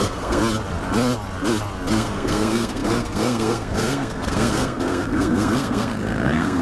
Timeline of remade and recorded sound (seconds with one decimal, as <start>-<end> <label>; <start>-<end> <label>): 0.0-0.4 remade; 0.4-1.9 recorded; 1.9-6.6 remade